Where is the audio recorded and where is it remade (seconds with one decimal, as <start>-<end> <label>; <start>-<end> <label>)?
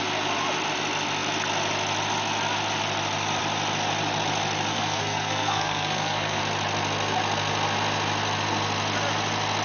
0.0-4.7 recorded; 4.7-6.4 remade; 6.4-9.6 recorded